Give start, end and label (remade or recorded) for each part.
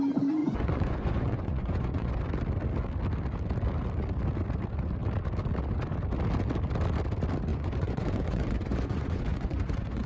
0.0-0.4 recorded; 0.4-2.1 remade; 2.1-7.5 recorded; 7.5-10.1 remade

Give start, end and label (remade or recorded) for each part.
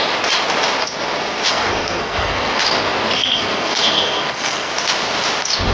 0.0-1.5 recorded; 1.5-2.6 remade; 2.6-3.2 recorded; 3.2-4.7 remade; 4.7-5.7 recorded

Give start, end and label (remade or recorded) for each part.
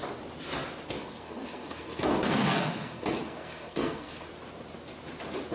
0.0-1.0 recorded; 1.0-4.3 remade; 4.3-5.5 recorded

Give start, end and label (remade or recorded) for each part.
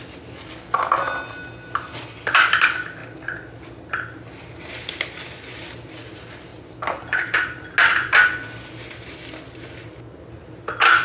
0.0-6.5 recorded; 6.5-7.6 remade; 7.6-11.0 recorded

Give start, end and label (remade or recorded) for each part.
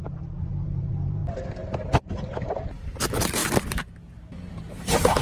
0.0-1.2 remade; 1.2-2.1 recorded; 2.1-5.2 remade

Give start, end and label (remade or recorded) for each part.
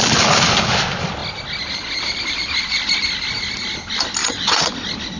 0.0-4.2 recorded; 4.2-4.7 remade; 4.7-5.2 recorded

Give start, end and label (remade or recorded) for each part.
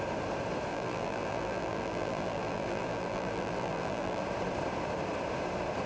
0.0-0.7 recorded; 0.7-4.2 remade; 4.2-5.9 recorded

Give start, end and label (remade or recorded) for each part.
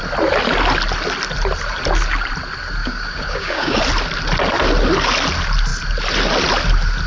0.0-2.8 recorded; 2.8-3.8 remade; 3.8-7.1 recorded